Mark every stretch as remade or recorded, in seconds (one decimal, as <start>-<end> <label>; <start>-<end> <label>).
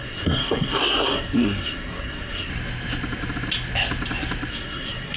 0.0-2.5 remade; 2.5-4.5 recorded; 4.5-5.2 remade